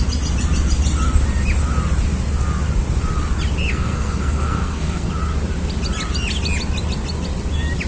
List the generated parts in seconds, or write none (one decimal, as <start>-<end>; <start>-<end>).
3.7-5.1